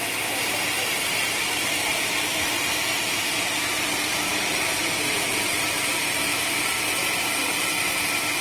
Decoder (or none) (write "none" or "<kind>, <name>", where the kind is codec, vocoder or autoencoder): vocoder, BigVGAN v2